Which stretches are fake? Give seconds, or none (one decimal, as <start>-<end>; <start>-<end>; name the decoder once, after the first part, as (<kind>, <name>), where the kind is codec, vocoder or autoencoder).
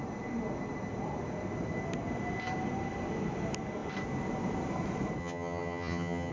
5.2-6.3 (vocoder, HiFi-GAN)